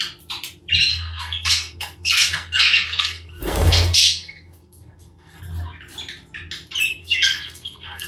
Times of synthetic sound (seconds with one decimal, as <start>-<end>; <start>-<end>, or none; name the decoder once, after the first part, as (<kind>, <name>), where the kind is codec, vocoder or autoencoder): 0.9-5.4 (codec, SNAC); 6.9-8.1